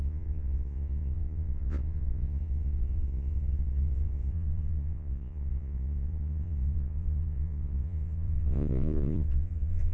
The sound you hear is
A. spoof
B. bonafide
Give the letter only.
A